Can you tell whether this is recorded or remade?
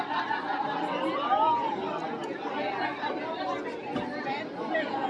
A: recorded